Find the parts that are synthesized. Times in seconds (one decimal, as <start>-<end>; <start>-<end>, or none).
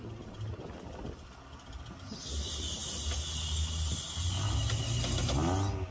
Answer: none